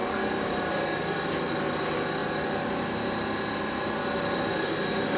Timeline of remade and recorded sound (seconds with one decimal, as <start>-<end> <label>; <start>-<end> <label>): 0.0-5.2 recorded